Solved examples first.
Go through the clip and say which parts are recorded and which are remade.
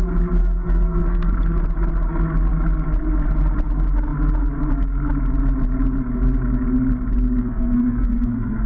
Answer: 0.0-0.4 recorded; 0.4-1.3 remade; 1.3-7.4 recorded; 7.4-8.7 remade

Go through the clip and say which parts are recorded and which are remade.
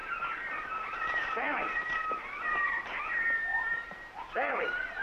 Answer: 0.0-3.0 remade; 3.0-3.5 recorded; 3.5-4.6 remade; 4.6-5.0 recorded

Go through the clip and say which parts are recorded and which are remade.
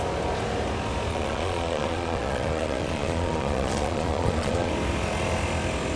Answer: 0.0-1.1 recorded; 1.1-4.7 remade; 4.7-6.0 recorded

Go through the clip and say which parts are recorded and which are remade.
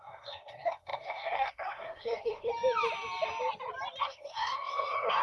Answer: 0.0-2.5 remade; 2.5-4.0 recorded; 4.0-5.2 remade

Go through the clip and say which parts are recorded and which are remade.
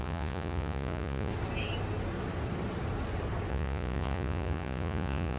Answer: 0.0-1.3 remade; 1.3-3.5 recorded; 3.5-5.4 remade